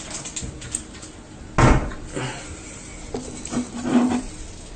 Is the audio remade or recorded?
recorded